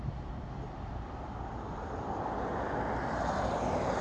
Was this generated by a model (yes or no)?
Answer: no